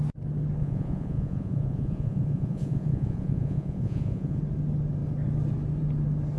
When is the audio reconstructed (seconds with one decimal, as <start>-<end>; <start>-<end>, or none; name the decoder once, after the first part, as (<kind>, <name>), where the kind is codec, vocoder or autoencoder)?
0.6-4.4 (vocoder, Vocos)